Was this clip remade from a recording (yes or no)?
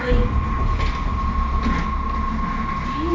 no